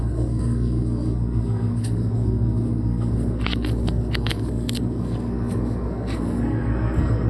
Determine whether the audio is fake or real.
fake